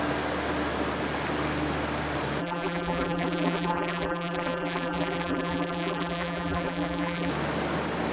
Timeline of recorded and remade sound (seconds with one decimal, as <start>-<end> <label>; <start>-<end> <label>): 0.0-2.4 recorded; 2.4-7.3 remade; 7.3-8.1 recorded